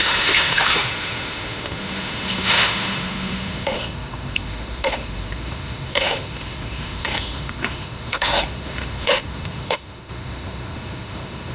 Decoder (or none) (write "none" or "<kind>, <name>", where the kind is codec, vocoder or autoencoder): autoencoder, DAC-VAE